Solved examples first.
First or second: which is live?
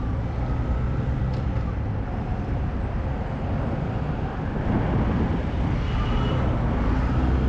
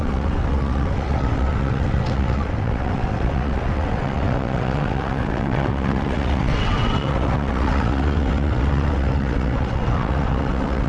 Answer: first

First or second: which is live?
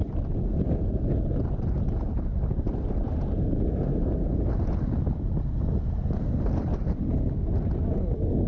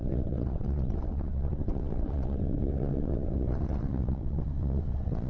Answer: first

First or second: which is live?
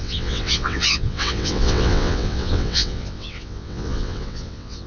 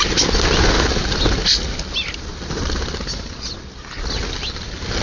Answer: second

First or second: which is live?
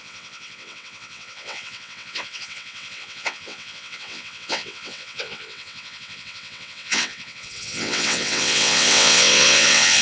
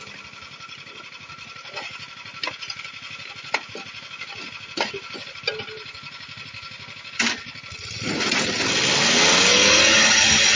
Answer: second